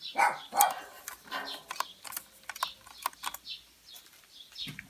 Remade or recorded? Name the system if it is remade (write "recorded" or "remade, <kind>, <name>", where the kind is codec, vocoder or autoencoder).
recorded